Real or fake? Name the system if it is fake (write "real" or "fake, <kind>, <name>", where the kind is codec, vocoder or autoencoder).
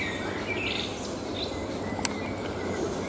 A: real